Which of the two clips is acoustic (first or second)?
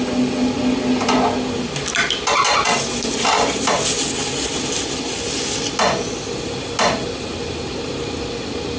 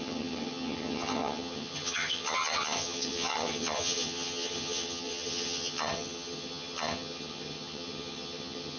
first